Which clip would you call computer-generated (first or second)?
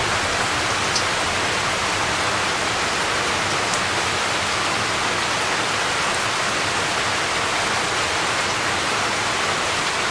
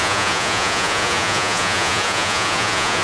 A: second